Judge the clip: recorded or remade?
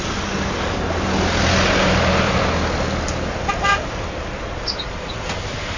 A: recorded